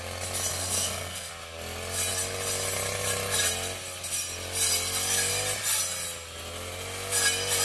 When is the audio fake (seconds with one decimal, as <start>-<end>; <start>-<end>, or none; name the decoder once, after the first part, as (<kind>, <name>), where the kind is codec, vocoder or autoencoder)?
0.5-1.3 (codec, SNAC)